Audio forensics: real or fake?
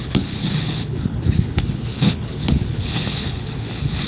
fake